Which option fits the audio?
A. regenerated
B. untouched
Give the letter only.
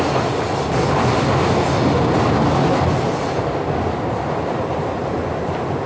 B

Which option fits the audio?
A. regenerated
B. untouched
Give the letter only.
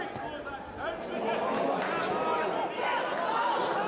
B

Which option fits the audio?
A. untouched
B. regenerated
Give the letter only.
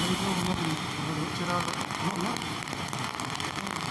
A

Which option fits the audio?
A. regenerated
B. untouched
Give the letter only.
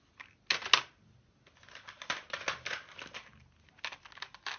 B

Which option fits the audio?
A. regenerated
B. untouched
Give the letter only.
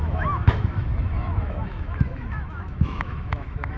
A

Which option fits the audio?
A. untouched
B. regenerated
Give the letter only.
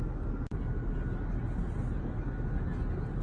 A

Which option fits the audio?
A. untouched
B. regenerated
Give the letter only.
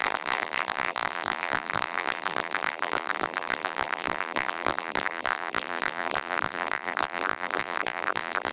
B